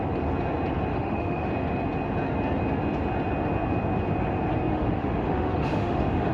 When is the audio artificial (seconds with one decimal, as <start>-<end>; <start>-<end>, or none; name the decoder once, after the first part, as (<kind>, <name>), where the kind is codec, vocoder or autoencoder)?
0.9-1.5 (autoencoder, DAC-VAE); 4.7-6.3